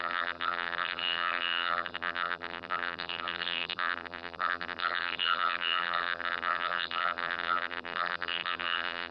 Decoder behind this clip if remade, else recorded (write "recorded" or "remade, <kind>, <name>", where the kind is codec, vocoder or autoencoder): remade, vocoder, BigVGAN v2